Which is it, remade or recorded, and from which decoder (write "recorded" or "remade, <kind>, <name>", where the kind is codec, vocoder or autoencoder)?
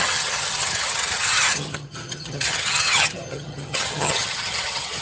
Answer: remade, vocoder, HiFi-GAN